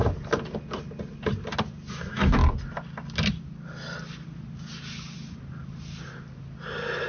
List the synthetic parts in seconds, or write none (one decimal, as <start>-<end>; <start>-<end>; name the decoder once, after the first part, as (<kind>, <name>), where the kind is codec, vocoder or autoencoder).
1.9-2.4 (autoencoder, DAC-VAE)